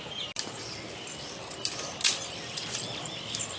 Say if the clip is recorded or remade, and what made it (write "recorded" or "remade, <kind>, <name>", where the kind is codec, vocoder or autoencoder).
recorded